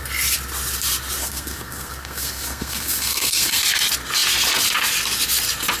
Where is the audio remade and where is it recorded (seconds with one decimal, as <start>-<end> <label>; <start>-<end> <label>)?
0.0-1.2 recorded; 1.2-3.6 remade; 3.6-5.8 recorded